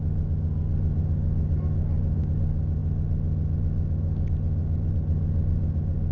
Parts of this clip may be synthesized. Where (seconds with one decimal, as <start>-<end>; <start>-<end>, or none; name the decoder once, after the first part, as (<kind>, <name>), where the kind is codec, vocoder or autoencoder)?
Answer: none